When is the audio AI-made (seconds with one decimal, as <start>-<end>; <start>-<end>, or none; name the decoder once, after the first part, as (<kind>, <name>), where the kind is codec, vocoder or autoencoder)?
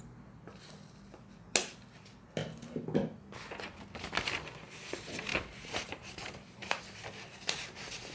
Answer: 5.3-6.8 (vocoder, BigVGAN v2)